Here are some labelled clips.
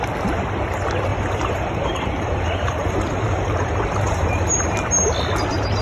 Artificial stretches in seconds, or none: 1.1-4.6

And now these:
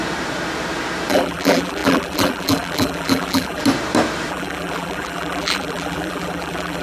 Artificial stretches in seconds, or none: 1.1-3.6; 4.3-6.8

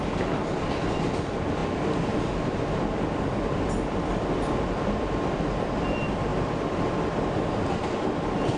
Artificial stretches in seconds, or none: none

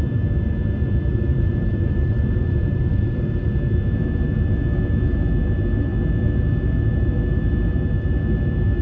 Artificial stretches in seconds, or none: 1.3-3.5

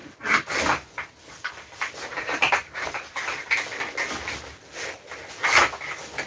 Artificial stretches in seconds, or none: 2.1-3.4